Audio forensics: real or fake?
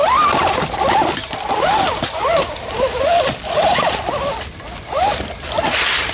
real